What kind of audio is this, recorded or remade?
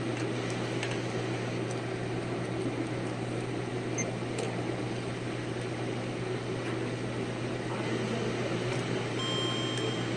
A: recorded